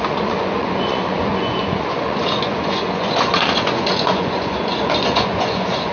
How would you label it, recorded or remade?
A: remade